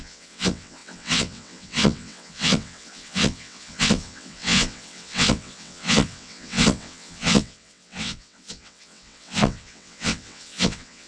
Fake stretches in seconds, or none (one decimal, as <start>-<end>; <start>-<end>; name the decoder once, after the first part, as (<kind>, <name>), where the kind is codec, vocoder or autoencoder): 0.0-11.1 (vocoder, WaveNeXt)